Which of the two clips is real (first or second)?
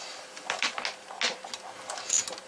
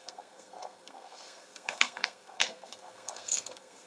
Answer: first